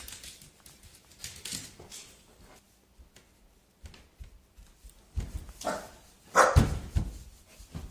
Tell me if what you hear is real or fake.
real